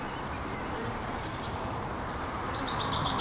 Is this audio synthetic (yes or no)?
yes